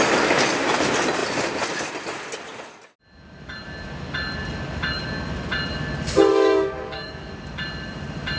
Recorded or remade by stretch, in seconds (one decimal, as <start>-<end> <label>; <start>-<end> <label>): 0.0-6.3 recorded; 6.3-7.3 remade; 7.3-8.4 recorded